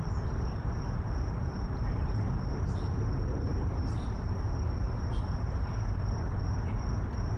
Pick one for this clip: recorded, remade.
recorded